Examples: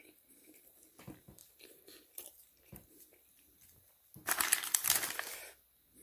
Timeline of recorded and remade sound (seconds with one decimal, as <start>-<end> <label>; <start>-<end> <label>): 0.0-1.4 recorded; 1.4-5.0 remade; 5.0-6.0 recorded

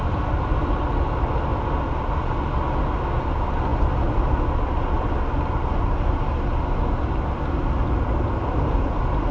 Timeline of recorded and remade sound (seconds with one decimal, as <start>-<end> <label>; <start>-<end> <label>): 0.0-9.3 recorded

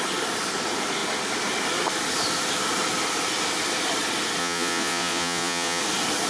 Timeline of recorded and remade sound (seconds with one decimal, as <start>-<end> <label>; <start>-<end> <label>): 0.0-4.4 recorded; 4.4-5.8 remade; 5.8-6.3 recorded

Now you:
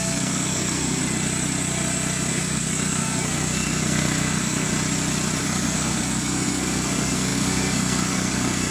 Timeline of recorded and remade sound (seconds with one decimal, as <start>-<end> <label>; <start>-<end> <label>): 0.0-1.0 remade; 1.0-2.3 recorded; 2.3-4.7 remade; 4.7-5.4 recorded; 5.4-8.7 remade

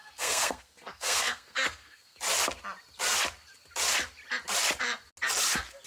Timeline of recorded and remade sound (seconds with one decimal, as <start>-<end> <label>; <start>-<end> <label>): 0.0-2.2 remade; 2.2-5.9 recorded

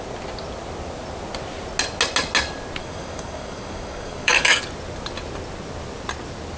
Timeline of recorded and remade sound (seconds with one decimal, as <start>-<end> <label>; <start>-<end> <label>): 0.0-2.8 recorded; 2.8-4.6 remade; 4.6-6.6 recorded

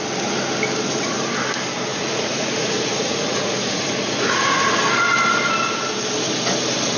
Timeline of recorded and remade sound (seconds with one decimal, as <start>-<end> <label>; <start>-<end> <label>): 0.0-1.9 recorded; 1.9-4.8 remade; 4.8-7.0 recorded

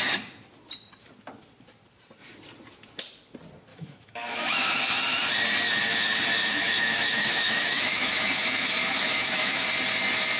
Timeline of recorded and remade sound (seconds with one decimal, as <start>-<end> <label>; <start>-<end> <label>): 0.0-3.7 recorded; 3.7-4.8 remade; 4.8-6.4 recorded; 6.4-9.7 remade; 9.7-10.4 recorded